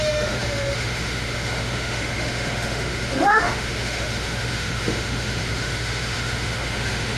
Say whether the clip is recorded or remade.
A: remade